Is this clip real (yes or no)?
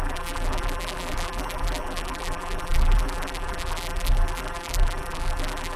no